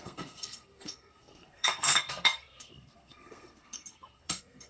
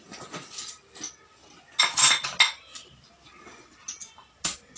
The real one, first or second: second